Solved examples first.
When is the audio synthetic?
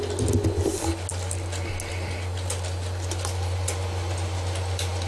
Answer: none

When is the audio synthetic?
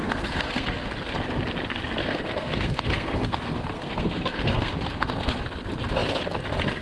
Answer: 0.0-0.9 (codec, SNAC); 2.0-5.4